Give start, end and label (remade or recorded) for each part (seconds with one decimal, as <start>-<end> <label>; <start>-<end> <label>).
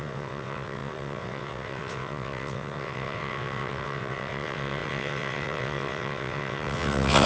0.0-7.3 remade